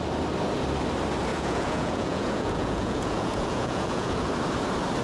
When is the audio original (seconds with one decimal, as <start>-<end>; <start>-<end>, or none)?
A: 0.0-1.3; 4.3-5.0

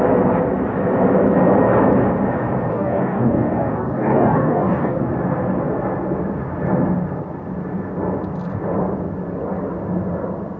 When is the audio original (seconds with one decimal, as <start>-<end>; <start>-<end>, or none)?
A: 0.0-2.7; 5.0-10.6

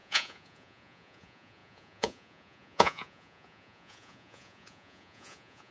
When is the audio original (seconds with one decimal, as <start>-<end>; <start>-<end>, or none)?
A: none